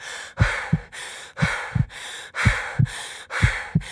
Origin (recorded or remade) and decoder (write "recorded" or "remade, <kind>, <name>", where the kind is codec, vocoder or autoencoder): recorded